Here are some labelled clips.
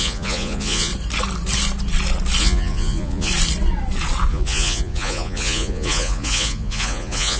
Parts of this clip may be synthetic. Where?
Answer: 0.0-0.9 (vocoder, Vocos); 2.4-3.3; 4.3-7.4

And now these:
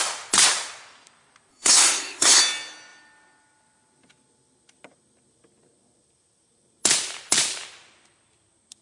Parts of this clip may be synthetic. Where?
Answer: 1.5-2.4 (codec, SNAC)

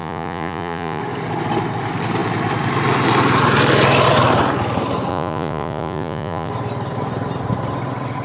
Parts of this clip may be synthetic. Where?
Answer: 0.0-1.0 (vocoder, Vocos); 5.1-6.5

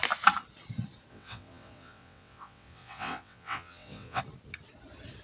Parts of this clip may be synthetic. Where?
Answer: 1.1-4.2 (vocoder, WaveNeXt)

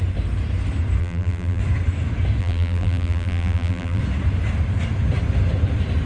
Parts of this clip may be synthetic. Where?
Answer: 1.0-1.6 (vocoder, BigVGAN v2); 2.4-4.0

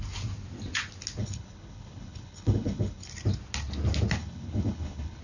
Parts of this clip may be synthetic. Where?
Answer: 1.2-3.1 (codec, HILCodec); 4.2-5.2

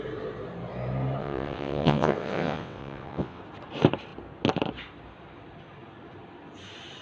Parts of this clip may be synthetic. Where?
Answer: 1.2-3.4 (vocoder, WaveNeXt)